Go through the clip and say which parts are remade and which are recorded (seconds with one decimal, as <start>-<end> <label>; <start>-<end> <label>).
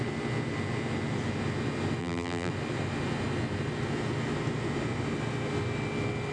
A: 0.0-2.0 recorded; 2.0-2.5 remade; 2.5-6.3 recorded